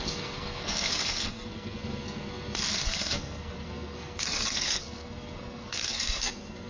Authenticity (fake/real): fake